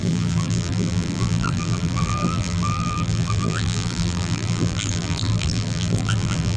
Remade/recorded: remade